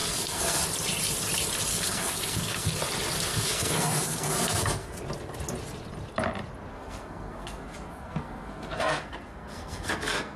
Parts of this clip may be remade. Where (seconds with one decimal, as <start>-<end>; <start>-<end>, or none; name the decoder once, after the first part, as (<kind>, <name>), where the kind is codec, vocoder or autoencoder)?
0.0-0.6 (codec, SNAC); 1.7-2.7; 3.3-5.0; 6.7-10.4